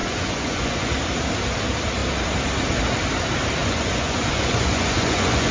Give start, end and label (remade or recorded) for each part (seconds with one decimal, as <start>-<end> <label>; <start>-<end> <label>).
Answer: 0.0-0.9 remade; 0.9-3.6 recorded; 3.6-5.5 remade